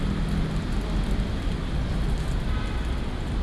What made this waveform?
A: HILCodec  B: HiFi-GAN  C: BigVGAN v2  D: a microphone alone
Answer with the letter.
D